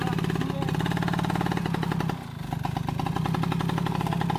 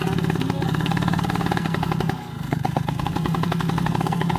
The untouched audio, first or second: first